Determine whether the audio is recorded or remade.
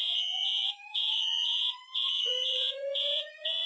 remade